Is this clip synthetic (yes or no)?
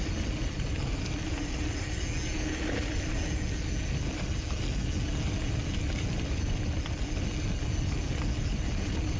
no